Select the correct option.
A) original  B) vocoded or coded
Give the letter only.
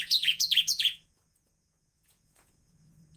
B